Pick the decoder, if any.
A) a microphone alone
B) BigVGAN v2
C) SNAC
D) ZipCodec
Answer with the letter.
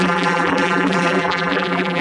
B